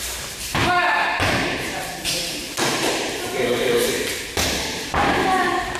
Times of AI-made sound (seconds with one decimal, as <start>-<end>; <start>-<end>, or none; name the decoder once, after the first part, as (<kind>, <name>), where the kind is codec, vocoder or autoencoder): 0.0-5.8 (vocoder, BigVGAN v2)